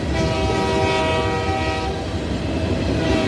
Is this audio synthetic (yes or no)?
no